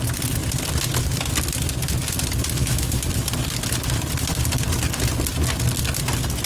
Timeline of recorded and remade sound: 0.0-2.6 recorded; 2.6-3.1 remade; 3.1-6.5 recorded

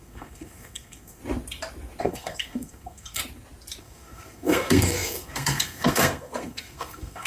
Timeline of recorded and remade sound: 0.0-1.2 remade; 1.2-2.0 recorded; 2.0-3.2 remade; 3.2-3.8 recorded; 3.8-7.3 remade

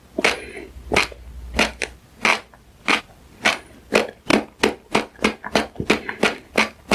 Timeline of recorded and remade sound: 0.0-2.3 recorded; 2.3-3.0 remade; 3.0-6.9 recorded

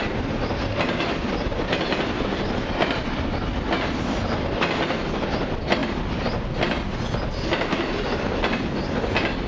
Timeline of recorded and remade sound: 0.0-5.8 recorded; 5.8-6.6 remade; 6.6-9.5 recorded

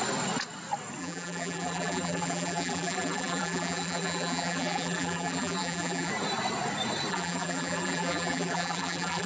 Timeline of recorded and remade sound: 0.0-1.0 recorded; 1.0-6.1 remade; 6.1-7.1 recorded; 7.1-9.3 remade

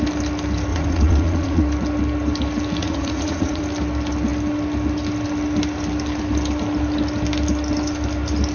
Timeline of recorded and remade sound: 0.0-0.7 recorded; 0.7-1.6 remade; 1.6-2.8 recorded; 2.8-3.6 remade; 3.6-8.5 recorded

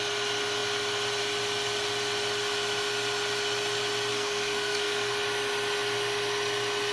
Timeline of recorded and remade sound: 0.0-4.1 recorded; 4.1-5.1 remade; 5.1-6.9 recorded

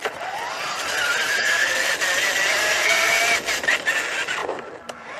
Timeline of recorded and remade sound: 0.0-1.4 recorded; 1.4-1.9 remade; 1.9-2.6 recorded; 2.6-3.2 remade; 3.2-5.2 recorded